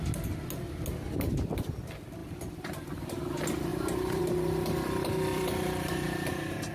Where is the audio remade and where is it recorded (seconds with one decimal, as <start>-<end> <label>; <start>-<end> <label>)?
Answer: 0.0-3.7 recorded; 3.7-4.2 remade; 4.2-5.3 recorded; 5.3-5.9 remade; 5.9-6.7 recorded